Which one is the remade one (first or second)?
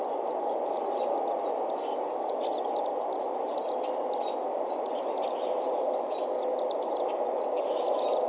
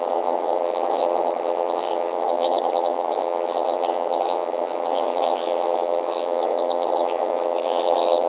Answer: second